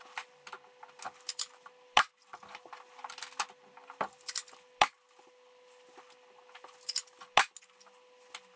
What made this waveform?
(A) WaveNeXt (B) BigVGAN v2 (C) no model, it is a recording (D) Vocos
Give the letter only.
C